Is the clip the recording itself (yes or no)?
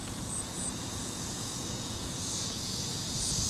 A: no